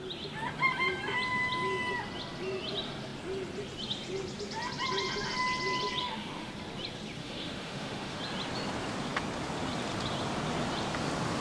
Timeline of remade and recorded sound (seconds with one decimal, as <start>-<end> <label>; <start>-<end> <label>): 0.0-6.0 recorded; 6.0-6.5 remade; 6.5-7.2 recorded; 7.2-8.2 remade; 8.2-11.4 recorded